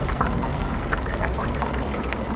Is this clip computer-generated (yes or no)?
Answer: yes